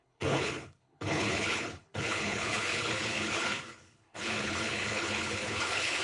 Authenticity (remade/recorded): remade